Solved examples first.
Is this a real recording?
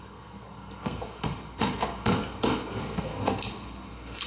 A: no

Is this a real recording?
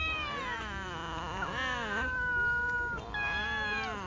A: yes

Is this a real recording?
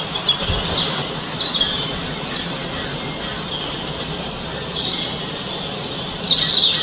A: yes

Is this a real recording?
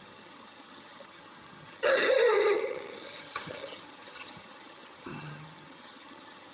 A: no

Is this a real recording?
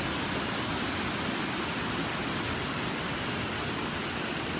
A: yes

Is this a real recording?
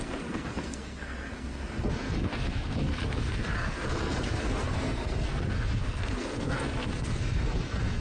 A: no